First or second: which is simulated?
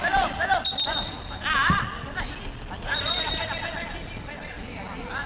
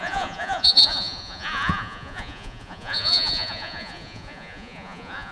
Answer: second